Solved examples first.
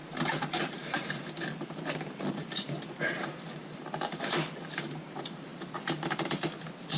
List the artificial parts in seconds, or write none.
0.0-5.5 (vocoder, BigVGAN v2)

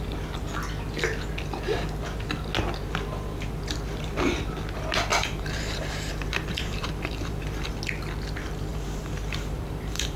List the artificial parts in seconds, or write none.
5.1-7.7 (vocoder, BigVGAN v2); 8.7-10.2

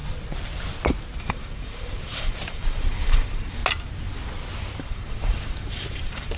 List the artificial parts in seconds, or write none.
1.2-3.6 (vocoder, BigVGAN v2); 4.8-6.4

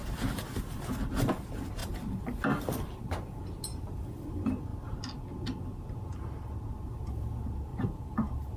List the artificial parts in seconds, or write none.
0.0-0.6 (vocoder, BigVGAN v2); 7.7-8.6

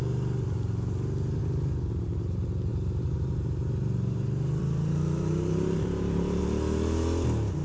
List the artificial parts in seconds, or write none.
1.4-2.0 (vocoder, BigVGAN v2); 2.7-6.4

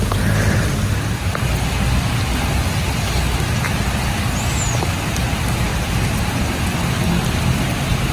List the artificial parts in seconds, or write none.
5.7-6.5 (vocoder, BigVGAN v2)

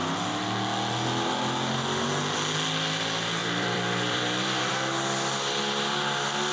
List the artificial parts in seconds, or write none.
3.4-4.7 (vocoder, BigVGAN v2)

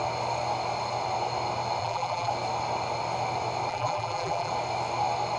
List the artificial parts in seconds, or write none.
1.8-2.3 (vocoder, BigVGAN v2); 3.7-4.5